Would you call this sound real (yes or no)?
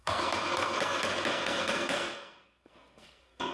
no